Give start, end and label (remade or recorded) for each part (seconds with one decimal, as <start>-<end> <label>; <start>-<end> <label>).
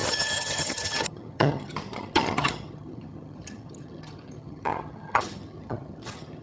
0.0-6.4 remade